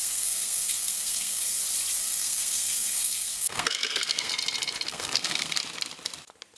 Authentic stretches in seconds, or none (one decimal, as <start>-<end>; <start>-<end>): 1.6-2.0; 4.3-4.9; 5.6-6.6